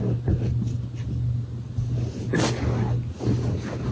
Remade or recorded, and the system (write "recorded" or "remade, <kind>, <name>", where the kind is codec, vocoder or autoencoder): recorded